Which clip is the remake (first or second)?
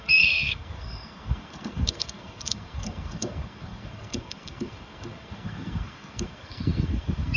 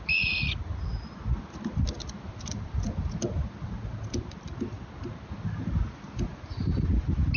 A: first